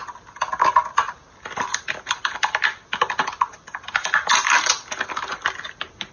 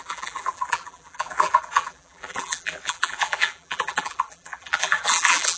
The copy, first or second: second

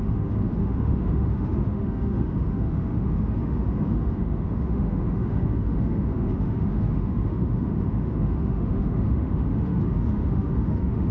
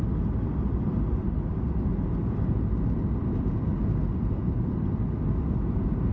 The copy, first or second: first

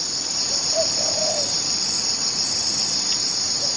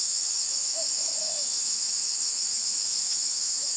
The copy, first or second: second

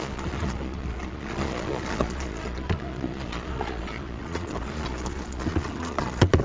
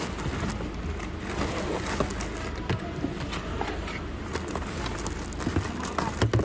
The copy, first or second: first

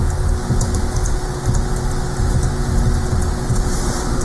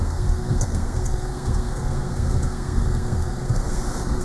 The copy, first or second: second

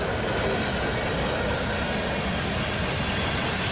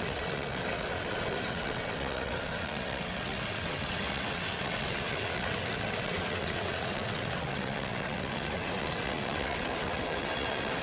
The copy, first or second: second